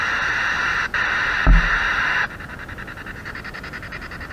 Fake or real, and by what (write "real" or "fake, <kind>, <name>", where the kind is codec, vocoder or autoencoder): real